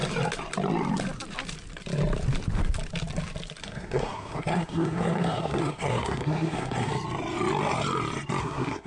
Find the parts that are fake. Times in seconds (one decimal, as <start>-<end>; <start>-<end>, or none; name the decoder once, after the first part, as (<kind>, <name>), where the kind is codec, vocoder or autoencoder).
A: 3.6-6.9 (codec, SNAC); 8.4-8.9